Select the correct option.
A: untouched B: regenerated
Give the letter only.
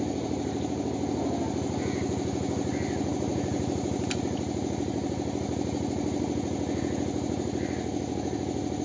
A